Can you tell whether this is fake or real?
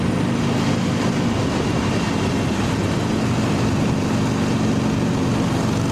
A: real